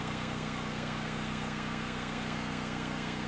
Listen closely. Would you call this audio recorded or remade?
remade